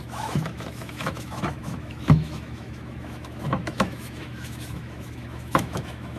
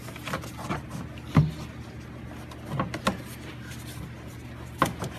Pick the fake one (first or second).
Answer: first